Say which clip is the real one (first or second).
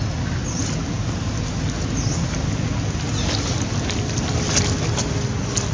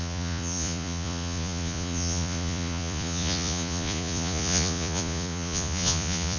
first